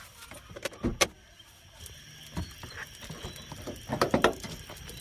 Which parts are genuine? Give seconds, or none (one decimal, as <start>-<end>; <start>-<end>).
0.0-5.0